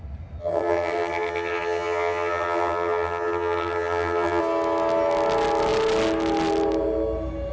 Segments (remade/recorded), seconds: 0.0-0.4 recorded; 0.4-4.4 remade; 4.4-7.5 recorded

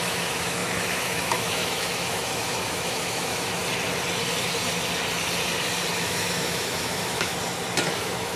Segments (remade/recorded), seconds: 0.0-3.6 remade; 3.6-5.9 recorded; 5.9-7.3 remade; 7.3-7.8 recorded; 7.8-8.4 remade